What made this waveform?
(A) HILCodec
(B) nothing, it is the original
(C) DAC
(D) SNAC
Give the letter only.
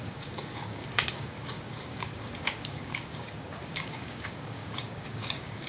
C